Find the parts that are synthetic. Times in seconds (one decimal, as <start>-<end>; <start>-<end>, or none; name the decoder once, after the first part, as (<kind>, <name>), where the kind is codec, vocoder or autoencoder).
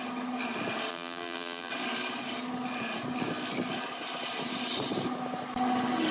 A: 0.9-1.7 (vocoder, BigVGAN v2)